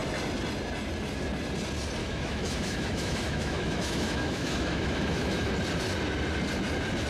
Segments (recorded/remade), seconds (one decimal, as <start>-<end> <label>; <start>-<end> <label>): 0.0-2.0 recorded; 2.0-5.5 remade; 5.5-7.1 recorded